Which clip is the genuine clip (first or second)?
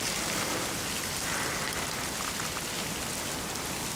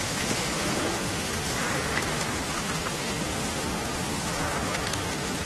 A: first